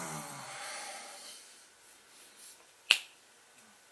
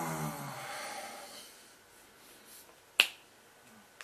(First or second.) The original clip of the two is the second